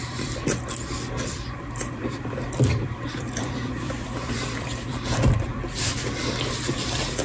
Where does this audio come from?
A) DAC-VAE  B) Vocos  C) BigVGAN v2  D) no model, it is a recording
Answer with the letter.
C